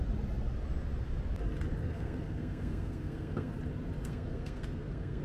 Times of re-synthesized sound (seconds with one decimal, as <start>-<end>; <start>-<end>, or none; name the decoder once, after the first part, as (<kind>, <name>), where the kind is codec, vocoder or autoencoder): 1.8-3.5 (codec, SNAC); 4.0-5.2